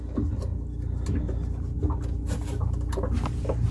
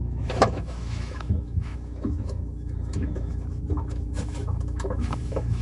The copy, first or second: second